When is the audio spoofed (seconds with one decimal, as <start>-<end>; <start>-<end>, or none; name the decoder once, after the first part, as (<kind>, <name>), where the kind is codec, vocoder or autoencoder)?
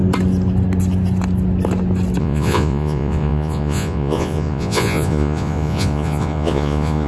2.2-7.1 (vocoder, Vocos)